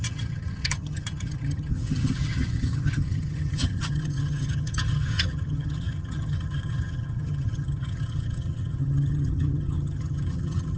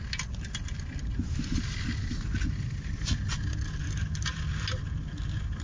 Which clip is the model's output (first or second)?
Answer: first